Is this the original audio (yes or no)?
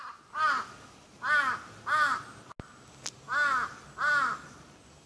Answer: yes